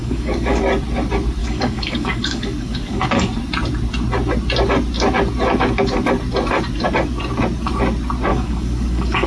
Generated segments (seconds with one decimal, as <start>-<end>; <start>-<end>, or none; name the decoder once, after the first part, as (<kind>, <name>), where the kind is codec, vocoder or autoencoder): 0.0-0.6 (codec, DAC); 1.4-3.0; 8.3-9.3